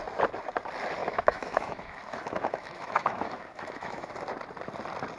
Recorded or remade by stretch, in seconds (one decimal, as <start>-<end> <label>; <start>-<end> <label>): 0.0-1.0 recorded; 1.0-4.1 remade; 4.1-5.2 recorded